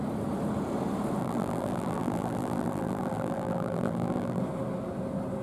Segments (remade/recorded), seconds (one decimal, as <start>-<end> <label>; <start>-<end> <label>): 0.0-1.2 recorded; 1.2-4.4 remade; 4.4-5.4 recorded